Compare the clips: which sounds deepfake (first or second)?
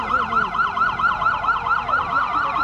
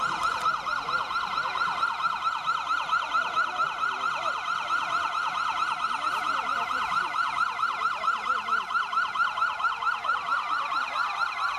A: second